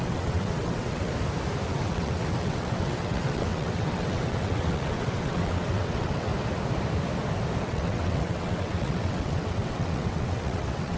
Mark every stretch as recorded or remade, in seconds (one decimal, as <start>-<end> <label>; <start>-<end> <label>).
0.0-1.1 remade; 1.1-1.7 recorded; 1.7-6.3 remade; 6.3-7.6 recorded; 7.6-11.0 remade